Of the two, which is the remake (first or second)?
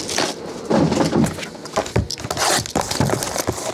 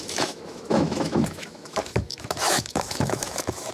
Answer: second